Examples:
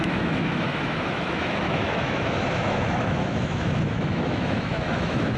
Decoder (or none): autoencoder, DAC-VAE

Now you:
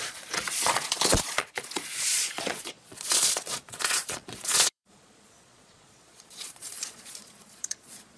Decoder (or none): vocoder, Vocos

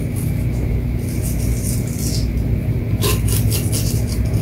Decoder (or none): none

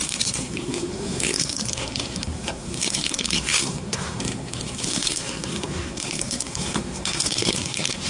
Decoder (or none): codec, SNAC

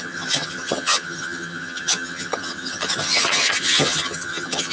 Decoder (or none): vocoder, HiFi-GAN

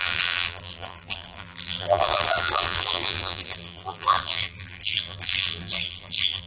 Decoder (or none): vocoder, BigVGAN v2